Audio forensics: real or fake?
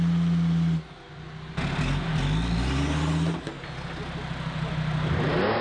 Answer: real